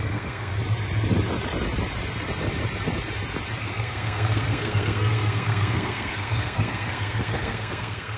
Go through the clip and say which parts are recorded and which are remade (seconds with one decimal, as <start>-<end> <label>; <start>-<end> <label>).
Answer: 0.0-0.5 remade; 0.5-3.6 recorded; 3.6-8.2 remade